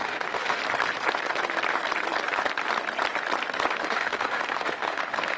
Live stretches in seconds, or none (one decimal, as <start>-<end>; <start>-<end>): 0.6-3.8